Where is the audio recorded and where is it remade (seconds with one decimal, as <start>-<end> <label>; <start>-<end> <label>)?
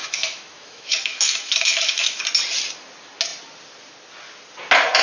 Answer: 0.0-2.2 remade; 2.2-5.0 recorded